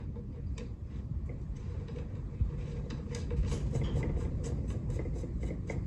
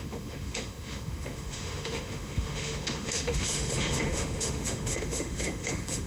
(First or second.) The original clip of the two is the first